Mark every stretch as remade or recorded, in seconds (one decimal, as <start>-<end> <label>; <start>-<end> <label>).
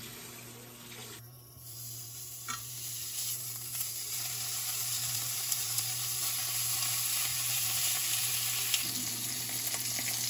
0.0-1.0 recorded; 1.0-6.2 remade; 6.2-7.3 recorded; 7.3-8.3 remade; 8.3-9.0 recorded; 9.0-9.5 remade; 9.5-10.3 recorded